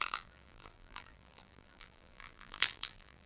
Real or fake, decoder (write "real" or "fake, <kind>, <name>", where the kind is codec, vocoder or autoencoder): fake, vocoder, BigVGAN v2